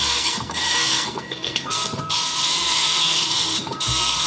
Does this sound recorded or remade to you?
remade